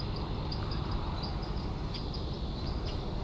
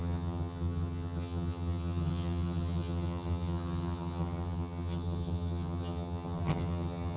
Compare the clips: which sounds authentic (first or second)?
first